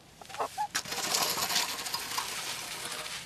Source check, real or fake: real